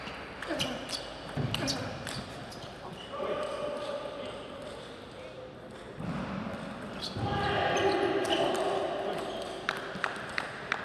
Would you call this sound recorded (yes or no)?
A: yes